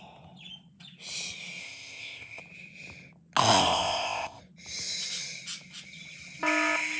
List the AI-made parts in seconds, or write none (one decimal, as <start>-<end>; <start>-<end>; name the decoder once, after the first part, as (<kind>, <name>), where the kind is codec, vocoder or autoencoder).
1.6-2.4 (codec, ZipCodec); 3.6-4.4